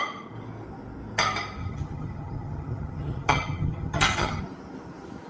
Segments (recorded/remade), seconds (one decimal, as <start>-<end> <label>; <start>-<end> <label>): 0.0-1.6 recorded; 1.6-4.4 remade; 4.4-5.3 recorded